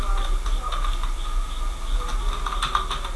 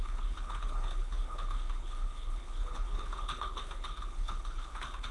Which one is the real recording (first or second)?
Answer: first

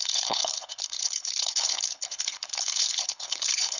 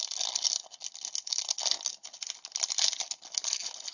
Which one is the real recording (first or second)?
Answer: second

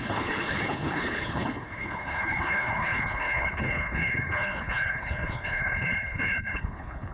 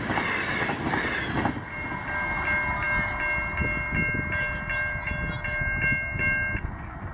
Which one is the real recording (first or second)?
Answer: second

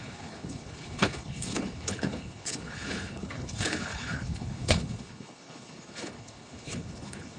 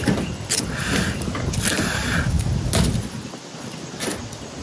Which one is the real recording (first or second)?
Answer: second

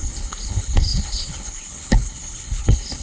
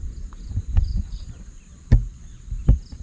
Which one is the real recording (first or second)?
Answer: second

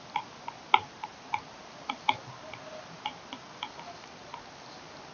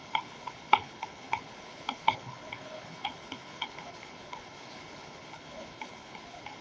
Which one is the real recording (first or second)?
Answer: first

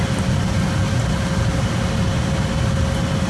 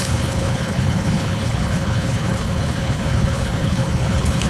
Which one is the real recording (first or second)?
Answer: first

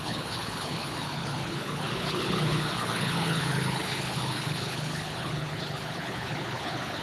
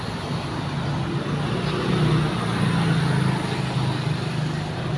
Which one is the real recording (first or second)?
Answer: second